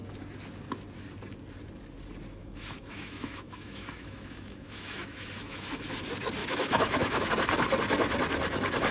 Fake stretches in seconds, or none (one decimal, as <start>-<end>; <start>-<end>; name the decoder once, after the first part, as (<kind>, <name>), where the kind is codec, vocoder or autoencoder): 2.4-5.8 (autoencoder, DAC-VAE); 6.4-7.3